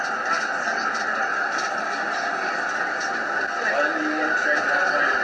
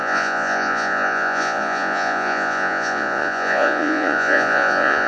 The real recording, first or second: first